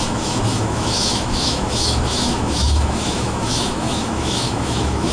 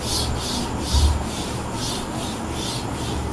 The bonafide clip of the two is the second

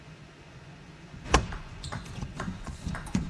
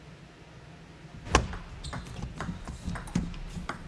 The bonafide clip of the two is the second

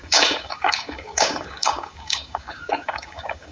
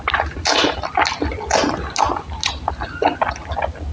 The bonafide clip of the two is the second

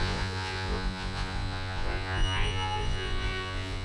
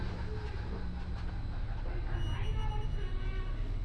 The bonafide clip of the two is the second